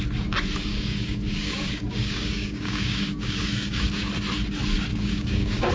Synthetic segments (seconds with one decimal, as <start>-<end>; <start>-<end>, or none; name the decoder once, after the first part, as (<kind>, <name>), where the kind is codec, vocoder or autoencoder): 0.7-4.1 (codec, DAC); 4.9-5.7